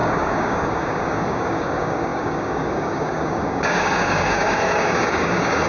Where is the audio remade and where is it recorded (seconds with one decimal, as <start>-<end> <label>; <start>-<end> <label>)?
0.0-5.7 remade

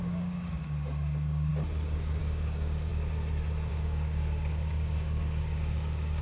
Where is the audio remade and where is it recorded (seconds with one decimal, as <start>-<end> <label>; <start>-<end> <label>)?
0.0-1.5 remade; 1.5-2.2 recorded; 2.2-2.9 remade; 2.9-3.7 recorded; 3.7-6.2 remade

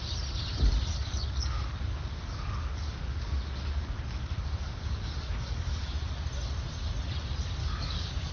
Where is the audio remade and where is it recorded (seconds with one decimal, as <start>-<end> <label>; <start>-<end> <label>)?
0.0-0.9 recorded; 0.9-5.9 remade; 5.9-7.6 recorded; 7.6-8.3 remade